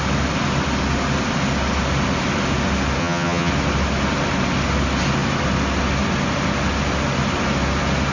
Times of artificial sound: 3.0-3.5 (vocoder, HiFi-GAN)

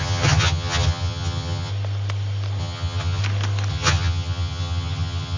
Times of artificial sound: 0.0-1.7 (vocoder, HiFi-GAN); 2.6-3.2; 3.7-5.4

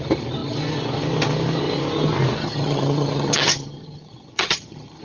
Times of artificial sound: 2.4-5.0 (vocoder, HiFi-GAN)

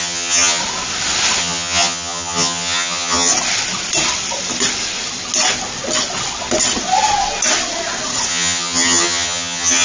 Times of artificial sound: 0.0-0.6 (vocoder, HiFi-GAN); 1.4-3.3; 8.3-9.8

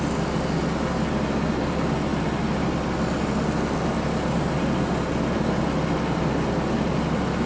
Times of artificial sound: none

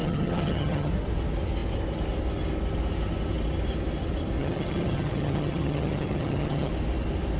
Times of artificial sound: 0.0-0.9 (vocoder, HiFi-GAN); 4.4-6.7